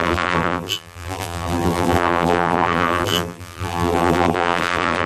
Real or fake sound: fake